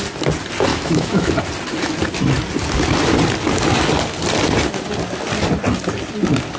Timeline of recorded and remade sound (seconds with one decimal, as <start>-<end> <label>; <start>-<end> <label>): 0.0-0.7 recorded; 0.7-1.3 remade; 1.3-6.6 recorded